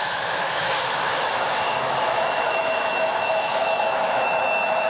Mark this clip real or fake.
fake